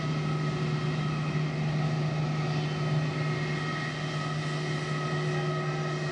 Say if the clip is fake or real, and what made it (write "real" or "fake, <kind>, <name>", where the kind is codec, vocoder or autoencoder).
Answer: real